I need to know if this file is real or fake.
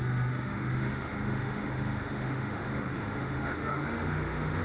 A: fake